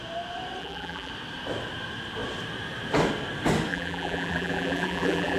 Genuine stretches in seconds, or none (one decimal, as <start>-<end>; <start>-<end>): 0.0-0.6; 1.1-3.7